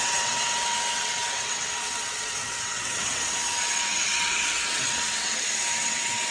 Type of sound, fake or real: fake